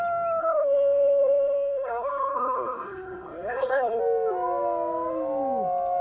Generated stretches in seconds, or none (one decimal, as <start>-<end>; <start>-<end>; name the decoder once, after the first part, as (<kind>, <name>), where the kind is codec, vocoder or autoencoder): 0.4-4.0 (codec, SNAC)